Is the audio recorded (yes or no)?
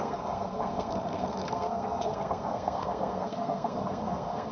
no